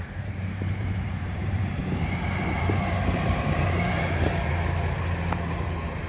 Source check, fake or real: fake